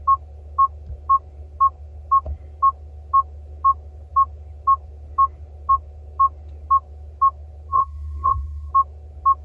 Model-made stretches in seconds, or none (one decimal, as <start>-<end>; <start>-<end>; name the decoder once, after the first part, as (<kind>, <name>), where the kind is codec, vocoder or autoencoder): 7.7-8.7 (codec, SNAC)